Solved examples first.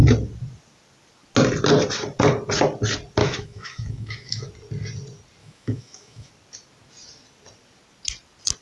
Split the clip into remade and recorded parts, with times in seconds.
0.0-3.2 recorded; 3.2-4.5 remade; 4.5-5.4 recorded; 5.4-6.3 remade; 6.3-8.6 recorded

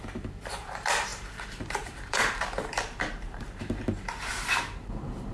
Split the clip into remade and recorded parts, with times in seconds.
0.0-5.3 remade

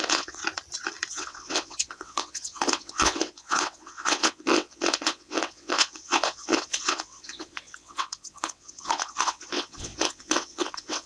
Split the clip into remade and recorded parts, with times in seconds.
0.0-0.4 remade; 0.4-1.1 recorded; 1.1-11.1 remade

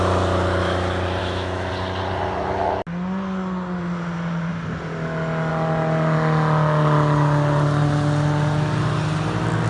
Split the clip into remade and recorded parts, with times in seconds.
0.0-1.2 recorded; 1.2-1.7 remade; 1.7-9.7 recorded